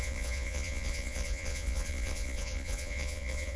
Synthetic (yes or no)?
yes